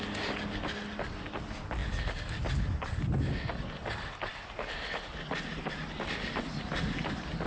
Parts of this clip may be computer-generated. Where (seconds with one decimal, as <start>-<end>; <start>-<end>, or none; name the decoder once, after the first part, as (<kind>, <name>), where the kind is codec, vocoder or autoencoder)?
none